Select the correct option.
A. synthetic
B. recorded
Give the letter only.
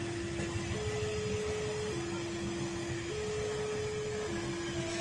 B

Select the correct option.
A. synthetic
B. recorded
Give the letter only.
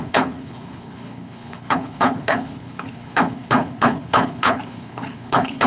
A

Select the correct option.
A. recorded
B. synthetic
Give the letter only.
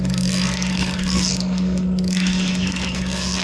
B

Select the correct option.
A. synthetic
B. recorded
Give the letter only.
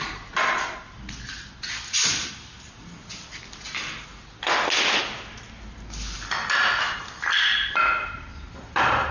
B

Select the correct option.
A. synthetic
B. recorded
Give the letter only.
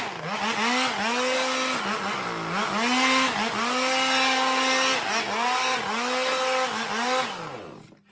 B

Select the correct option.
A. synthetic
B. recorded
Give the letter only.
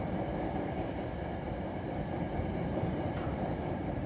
A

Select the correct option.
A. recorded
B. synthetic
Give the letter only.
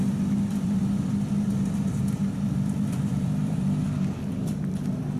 B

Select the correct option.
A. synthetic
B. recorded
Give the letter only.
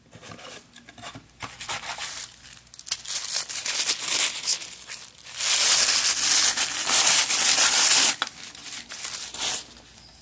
B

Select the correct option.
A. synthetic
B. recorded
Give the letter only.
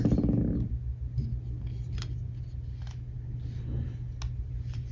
B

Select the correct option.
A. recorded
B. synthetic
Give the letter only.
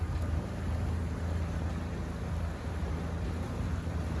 A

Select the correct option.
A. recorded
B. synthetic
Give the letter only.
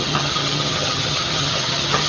B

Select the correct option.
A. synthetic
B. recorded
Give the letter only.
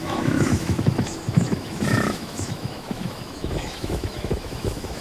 A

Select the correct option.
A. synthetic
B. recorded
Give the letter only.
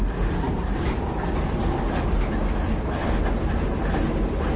B